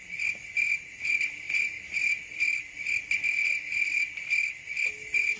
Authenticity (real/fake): real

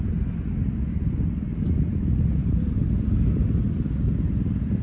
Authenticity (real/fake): real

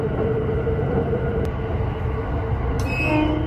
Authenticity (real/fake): real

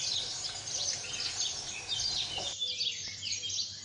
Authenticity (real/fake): real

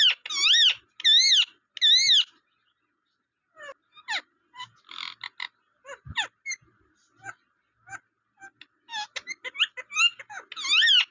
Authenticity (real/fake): real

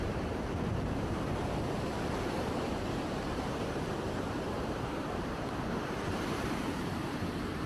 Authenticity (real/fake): fake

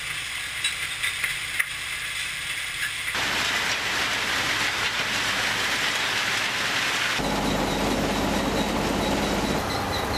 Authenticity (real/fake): real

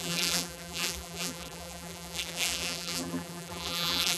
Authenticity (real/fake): fake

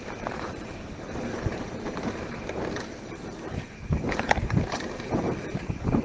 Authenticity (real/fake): fake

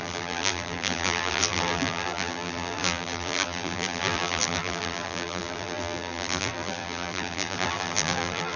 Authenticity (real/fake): fake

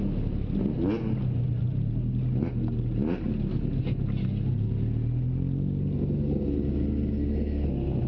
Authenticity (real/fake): real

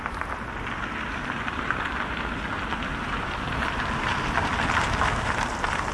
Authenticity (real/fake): fake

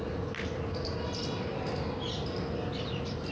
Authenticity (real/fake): fake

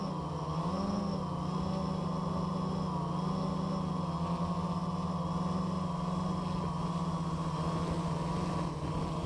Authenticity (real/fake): real